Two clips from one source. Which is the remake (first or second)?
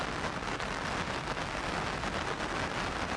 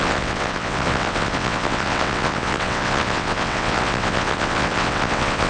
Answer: second